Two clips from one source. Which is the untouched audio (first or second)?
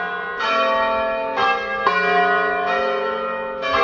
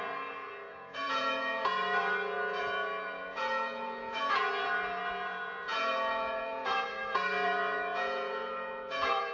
first